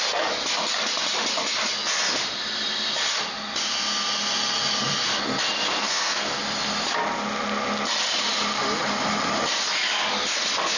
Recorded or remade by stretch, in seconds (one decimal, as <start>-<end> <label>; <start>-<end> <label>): 0.0-5.8 recorded; 5.8-6.4 remade; 6.4-10.8 recorded